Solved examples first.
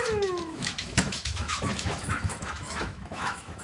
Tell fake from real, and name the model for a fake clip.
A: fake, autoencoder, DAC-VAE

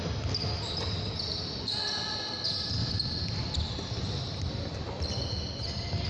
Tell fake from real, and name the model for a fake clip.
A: real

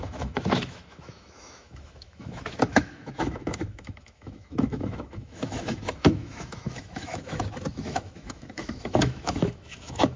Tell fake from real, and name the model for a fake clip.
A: fake, autoencoder, DAC-VAE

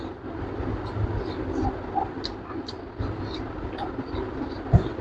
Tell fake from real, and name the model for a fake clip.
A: real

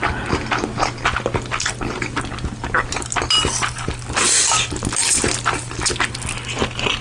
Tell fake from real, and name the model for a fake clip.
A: real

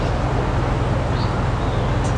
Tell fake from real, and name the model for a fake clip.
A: real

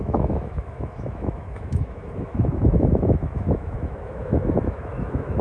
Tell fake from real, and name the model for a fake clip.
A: fake, autoencoder, DAC-VAE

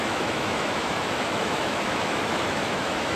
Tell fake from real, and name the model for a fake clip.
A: fake, autoencoder, DAC-VAE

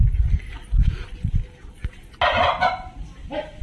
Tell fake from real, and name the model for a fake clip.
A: real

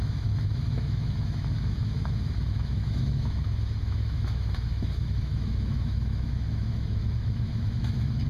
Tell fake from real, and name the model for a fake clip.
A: fake, autoencoder, DAC-VAE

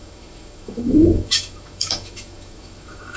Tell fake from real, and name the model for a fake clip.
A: fake, autoencoder, DAC-VAE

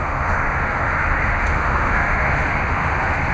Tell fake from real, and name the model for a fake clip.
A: fake, autoencoder, DAC-VAE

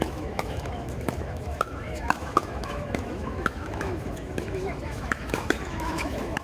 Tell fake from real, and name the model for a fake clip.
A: fake, autoencoder, DAC-VAE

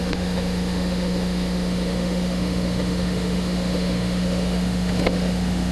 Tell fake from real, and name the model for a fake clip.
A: fake, autoencoder, DAC-VAE